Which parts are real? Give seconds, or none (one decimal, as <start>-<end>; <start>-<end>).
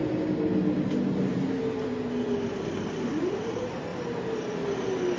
0.0-3.1; 3.9-5.2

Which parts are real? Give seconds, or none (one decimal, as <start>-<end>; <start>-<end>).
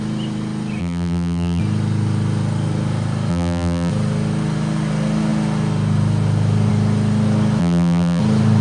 0.0-0.8; 1.6-3.3; 3.9-7.6; 8.2-8.6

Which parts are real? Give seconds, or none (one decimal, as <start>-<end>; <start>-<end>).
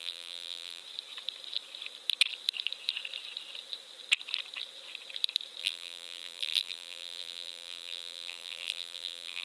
0.8-5.6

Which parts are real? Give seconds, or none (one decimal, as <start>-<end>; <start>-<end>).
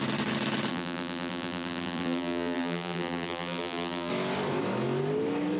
0.0-0.7; 4.1-5.6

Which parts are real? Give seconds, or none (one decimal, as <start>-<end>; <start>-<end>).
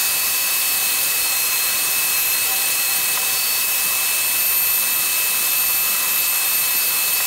3.8-7.3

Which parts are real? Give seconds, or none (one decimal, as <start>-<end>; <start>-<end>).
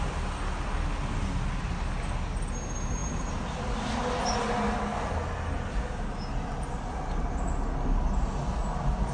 0.0-9.1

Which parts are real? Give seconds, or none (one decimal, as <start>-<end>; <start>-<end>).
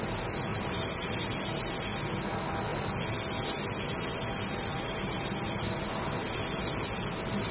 0.0-0.5; 1.1-4.7; 5.3-7.5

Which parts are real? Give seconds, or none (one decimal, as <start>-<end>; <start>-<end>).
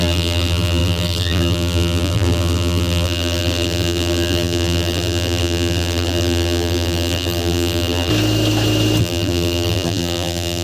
8.1-9.0